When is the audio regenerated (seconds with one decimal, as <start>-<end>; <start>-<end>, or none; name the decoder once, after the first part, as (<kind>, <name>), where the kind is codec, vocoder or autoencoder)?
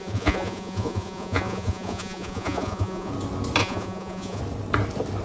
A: 0.0-3.1 (vocoder, Vocos); 3.6-4.4